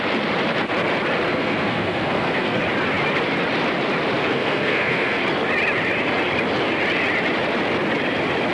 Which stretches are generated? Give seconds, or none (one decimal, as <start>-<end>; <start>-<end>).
1.3-2.6; 4.2-5.2